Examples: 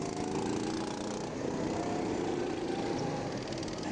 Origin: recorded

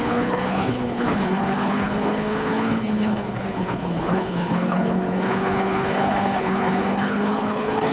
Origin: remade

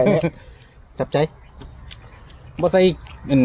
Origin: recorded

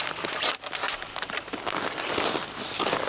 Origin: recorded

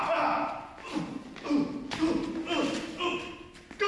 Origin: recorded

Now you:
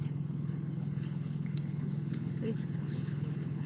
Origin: remade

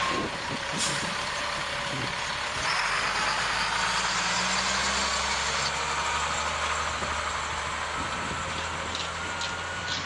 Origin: recorded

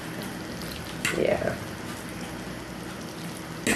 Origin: recorded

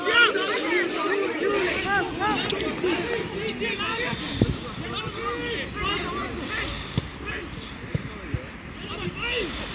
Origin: recorded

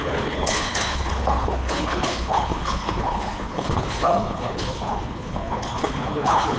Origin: remade